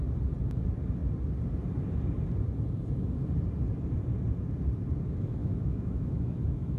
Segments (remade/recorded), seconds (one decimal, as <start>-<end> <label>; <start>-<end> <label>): 0.0-5.4 recorded; 5.4-6.8 remade

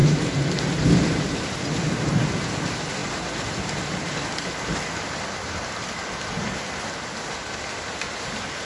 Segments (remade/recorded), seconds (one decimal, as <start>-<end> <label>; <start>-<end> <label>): 0.0-2.1 remade; 2.1-8.7 recorded

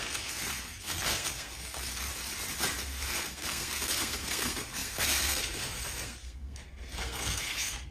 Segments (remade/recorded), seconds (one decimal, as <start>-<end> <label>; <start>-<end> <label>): 0.0-2.1 remade; 2.1-2.8 recorded; 2.8-7.9 remade

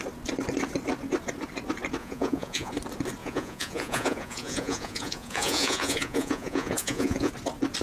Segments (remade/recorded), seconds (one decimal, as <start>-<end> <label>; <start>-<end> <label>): 0.0-2.0 recorded; 2.0-2.7 remade; 2.7-3.2 recorded; 3.2-7.3 remade; 7.3-7.8 recorded

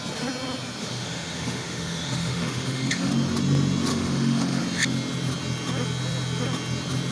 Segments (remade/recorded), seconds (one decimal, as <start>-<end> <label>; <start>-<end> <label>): 0.0-0.8 recorded; 0.8-3.1 remade; 3.1-3.9 recorded; 3.9-4.6 remade; 4.6-7.1 recorded

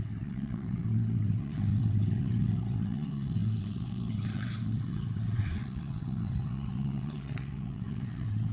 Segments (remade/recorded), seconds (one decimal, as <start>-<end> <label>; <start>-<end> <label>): 0.0-8.5 remade

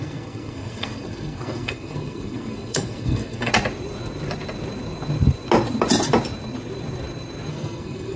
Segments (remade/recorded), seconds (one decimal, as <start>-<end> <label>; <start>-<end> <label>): 0.0-3.5 remade; 3.5-7.5 recorded; 7.5-8.2 remade

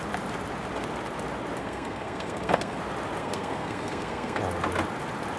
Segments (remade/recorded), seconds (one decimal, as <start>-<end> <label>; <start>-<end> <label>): 0.0-1.6 recorded; 1.6-2.8 remade; 2.8-3.2 recorded; 3.2-4.4 remade; 4.4-5.4 recorded